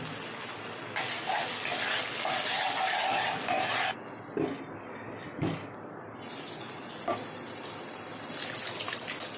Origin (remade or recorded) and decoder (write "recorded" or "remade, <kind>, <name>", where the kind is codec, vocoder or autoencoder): recorded